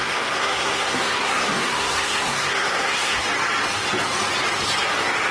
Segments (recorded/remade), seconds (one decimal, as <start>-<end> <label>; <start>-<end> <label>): 0.0-3.2 remade; 3.2-5.3 recorded